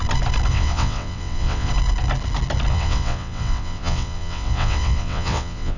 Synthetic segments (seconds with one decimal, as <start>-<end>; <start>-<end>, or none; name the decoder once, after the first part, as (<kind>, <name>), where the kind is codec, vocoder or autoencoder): 0.5-1.7 (vocoder, WaveNeXt); 2.7-5.8